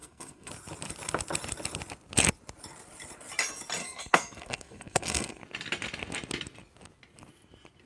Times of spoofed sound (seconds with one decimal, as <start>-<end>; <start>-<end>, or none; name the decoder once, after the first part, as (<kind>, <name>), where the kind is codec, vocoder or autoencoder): 0.0-0.5 (codec, SNAC); 3.8-5.4